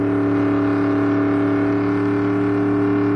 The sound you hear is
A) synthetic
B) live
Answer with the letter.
B